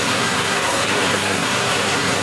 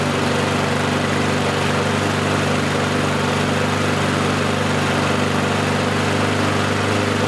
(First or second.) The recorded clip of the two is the second